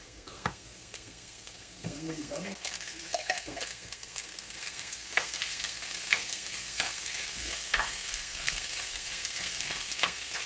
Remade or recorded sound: remade